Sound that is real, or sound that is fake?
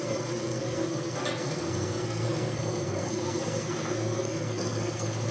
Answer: fake